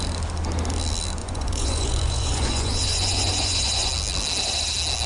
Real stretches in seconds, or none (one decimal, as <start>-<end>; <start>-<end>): 0.0-1.2; 3.9-5.1